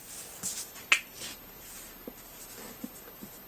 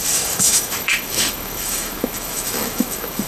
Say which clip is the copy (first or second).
second